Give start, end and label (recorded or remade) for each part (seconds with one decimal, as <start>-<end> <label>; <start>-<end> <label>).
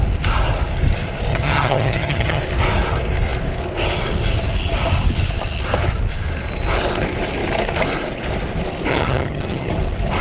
0.0-1.3 recorded; 1.3-2.4 remade; 2.4-8.9 recorded; 8.9-9.7 remade; 9.7-10.2 recorded